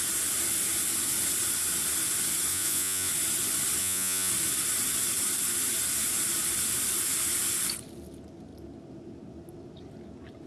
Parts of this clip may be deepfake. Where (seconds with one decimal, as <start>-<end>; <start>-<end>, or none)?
2.5-3.1; 3.8-4.3